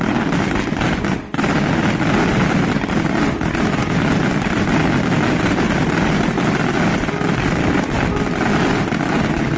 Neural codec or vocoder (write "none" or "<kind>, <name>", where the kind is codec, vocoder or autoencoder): none